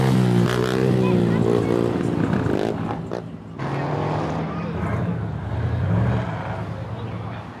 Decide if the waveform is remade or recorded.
recorded